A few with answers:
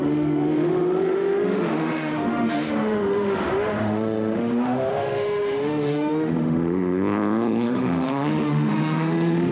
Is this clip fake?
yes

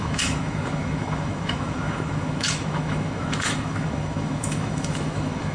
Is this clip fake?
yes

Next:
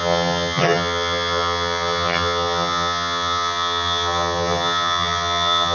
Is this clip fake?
yes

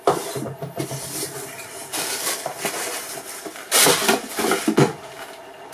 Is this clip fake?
no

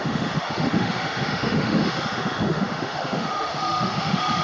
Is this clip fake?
yes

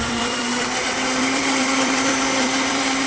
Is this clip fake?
yes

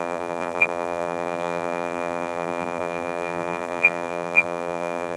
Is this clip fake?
yes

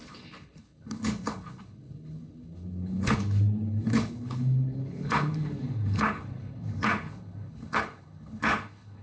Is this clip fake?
yes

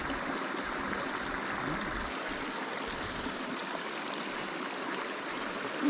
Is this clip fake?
no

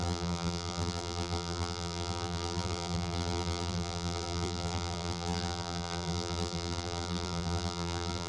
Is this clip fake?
yes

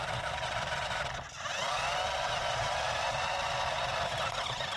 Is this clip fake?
no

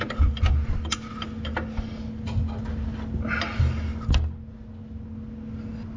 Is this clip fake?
no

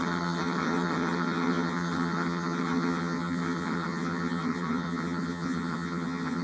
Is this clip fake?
yes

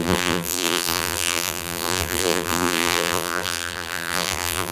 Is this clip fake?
yes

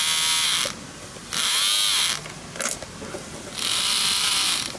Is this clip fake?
no